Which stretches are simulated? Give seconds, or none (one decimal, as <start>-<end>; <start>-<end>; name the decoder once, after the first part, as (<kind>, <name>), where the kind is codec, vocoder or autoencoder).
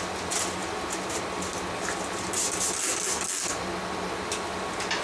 none